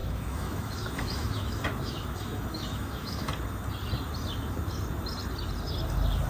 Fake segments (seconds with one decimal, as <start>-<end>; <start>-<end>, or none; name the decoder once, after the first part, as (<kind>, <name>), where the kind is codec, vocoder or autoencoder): 0.0-3.3 (autoencoder, DAC-VAE)